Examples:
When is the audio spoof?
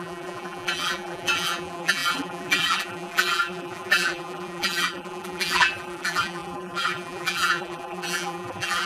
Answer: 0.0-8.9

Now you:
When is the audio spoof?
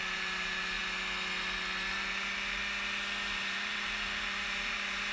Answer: 0.0-0.8; 1.9-2.6; 3.3-5.1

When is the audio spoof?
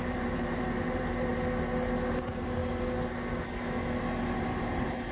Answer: 0.0-1.3; 2.1-2.6; 4.4-5.1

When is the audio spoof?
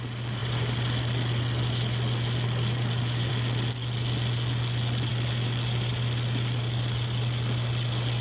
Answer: 0.4-3.3; 5.1-8.2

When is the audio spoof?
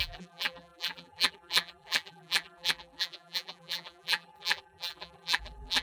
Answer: 0.0-5.8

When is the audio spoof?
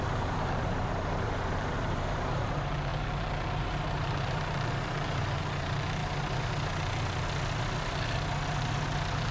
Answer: 0.0-6.0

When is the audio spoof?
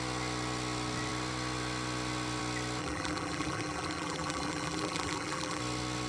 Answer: 2.8-5.6